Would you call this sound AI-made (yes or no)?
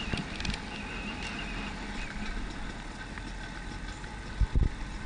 no